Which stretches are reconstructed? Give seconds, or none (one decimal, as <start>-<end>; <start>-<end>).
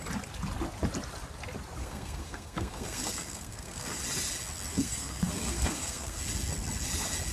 1.8-4.0; 4.7-6.2